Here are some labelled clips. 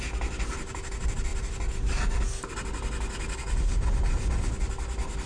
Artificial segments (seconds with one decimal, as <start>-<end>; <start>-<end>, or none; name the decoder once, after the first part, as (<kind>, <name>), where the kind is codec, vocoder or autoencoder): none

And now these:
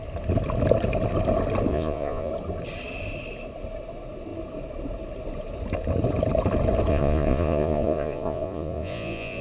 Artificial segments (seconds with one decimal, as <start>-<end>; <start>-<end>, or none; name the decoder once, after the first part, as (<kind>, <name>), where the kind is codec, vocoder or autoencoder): 1.7-2.3 (vocoder, Vocos); 6.9-9.4

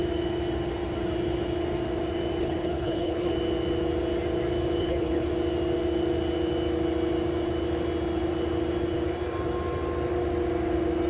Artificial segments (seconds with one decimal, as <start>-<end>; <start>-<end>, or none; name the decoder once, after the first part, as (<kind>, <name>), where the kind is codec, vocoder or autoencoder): 2.4-3.3 (codec, HILCodec); 4.8-5.3